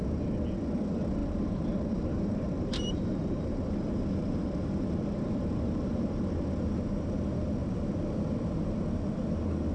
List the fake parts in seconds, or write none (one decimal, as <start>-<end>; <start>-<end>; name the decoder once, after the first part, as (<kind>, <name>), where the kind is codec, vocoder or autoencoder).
1.2-6.3 (vocoder, BigVGAN v2)